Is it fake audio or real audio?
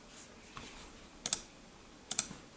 real